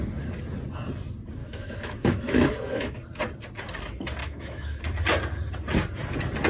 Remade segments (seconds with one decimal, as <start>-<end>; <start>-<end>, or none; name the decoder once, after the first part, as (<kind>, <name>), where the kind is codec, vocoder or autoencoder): 1.4-3.0 (autoencoder, DAC-VAE); 4.2-4.8